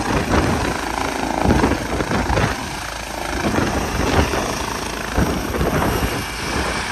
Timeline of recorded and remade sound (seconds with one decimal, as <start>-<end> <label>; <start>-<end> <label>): 0.0-6.9 recorded